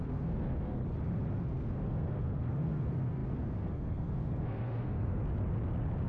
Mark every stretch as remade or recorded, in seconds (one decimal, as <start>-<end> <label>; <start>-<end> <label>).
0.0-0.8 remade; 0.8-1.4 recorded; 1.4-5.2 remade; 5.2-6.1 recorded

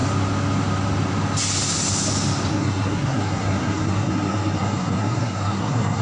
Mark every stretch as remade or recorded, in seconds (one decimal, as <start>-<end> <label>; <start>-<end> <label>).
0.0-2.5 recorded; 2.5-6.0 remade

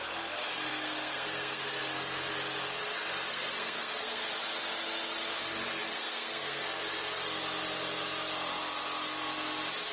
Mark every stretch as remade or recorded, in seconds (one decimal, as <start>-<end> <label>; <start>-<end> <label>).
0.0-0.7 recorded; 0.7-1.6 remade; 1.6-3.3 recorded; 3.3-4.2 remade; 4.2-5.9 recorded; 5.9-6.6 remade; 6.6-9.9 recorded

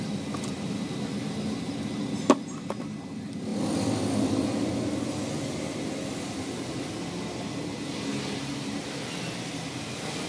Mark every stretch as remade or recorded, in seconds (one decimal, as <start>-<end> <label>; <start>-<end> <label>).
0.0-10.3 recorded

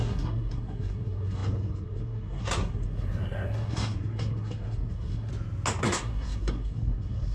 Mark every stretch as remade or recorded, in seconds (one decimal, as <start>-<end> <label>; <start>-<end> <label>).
0.0-5.3 remade; 5.3-5.8 recorded; 5.8-7.3 remade

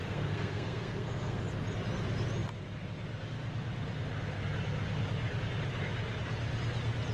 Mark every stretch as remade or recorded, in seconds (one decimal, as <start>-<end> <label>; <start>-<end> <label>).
0.0-1.4 remade; 1.4-7.1 recorded